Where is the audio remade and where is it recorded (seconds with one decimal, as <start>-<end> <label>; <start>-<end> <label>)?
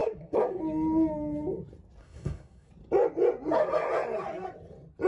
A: 0.0-0.6 remade; 0.6-2.0 recorded; 2.0-2.7 remade; 2.7-5.1 recorded